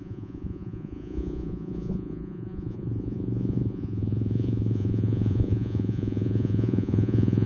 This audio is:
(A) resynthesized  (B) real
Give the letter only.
A